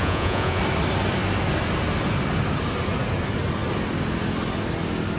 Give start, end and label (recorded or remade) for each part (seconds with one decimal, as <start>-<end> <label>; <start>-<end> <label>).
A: 0.0-0.6 remade; 0.6-5.2 recorded